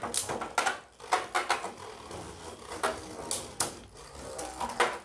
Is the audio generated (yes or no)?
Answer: no